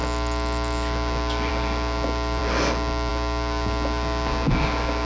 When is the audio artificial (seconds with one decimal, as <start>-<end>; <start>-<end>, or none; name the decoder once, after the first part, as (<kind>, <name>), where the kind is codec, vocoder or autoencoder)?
none